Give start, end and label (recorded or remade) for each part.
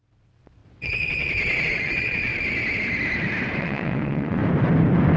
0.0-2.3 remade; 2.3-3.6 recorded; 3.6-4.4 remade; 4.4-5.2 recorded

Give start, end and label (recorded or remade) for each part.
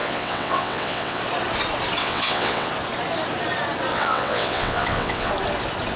0.0-1.2 remade; 1.2-2.0 recorded; 2.0-2.7 remade; 2.7-3.9 recorded; 3.9-5.3 remade; 5.3-6.0 recorded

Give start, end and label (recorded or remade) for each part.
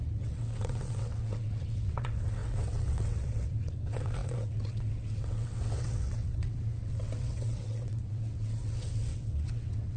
0.0-10.0 remade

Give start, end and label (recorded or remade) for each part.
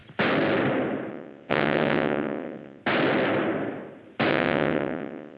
0.0-1.1 recorded; 1.1-2.8 remade; 2.8-4.3 recorded; 4.3-5.4 remade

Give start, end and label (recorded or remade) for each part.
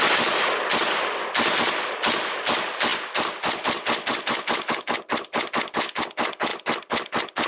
0.0-7.5 recorded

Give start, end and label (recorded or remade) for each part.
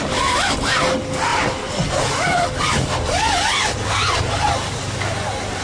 0.0-5.6 recorded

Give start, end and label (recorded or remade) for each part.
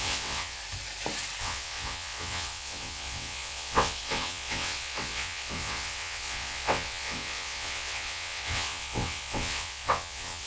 0.0-0.6 remade; 0.6-1.4 recorded; 1.4-10.5 remade